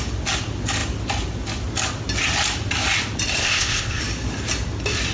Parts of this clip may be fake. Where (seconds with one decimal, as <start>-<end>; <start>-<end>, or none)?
3.4-4.0